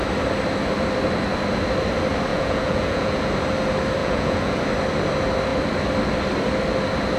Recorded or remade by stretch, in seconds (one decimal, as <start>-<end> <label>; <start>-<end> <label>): 0.0-2.3 recorded; 2.3-3.3 remade; 3.3-4.0 recorded; 4.0-4.6 remade; 4.6-7.2 recorded